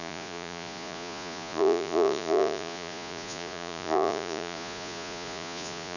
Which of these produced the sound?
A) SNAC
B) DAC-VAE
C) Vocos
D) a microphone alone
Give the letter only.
C